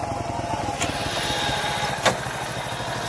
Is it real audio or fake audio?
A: real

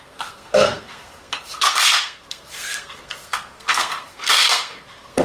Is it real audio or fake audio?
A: fake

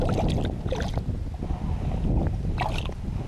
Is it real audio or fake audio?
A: real